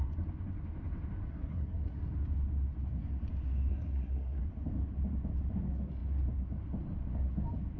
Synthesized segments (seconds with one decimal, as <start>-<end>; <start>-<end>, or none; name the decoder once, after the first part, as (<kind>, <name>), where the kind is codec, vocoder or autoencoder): 1.3-2.0 (codec, SNAC); 3.7-4.4